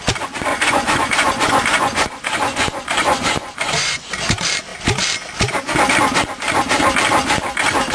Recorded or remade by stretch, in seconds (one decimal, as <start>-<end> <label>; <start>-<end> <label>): 0.0-0.5 recorded; 0.5-4.1 remade; 4.1-7.9 recorded